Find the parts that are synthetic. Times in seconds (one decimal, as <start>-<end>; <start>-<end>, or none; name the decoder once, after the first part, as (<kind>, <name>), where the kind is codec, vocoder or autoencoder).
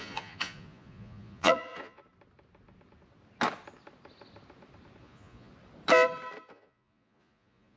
0.0-2.0 (vocoder, Vocos); 5.0-5.5; 6.5-7.8